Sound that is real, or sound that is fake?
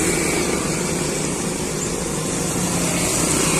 real